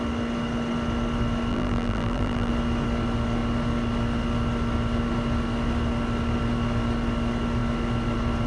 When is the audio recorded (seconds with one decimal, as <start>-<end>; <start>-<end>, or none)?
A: 0.0-1.5; 2.5-8.5